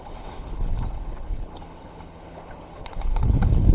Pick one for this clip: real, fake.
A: fake